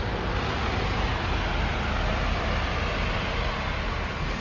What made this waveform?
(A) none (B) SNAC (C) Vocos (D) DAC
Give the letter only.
A